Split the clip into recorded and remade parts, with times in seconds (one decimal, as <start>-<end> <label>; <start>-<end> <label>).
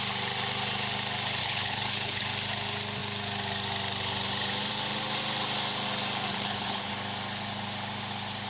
0.0-1.4 recorded; 1.4-2.2 remade; 2.2-6.3 recorded; 6.3-6.9 remade; 6.9-8.5 recorded